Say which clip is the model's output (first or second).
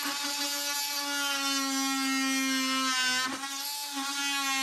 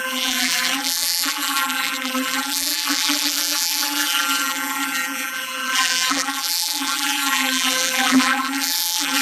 second